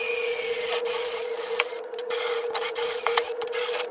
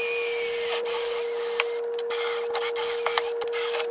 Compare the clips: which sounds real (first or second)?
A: second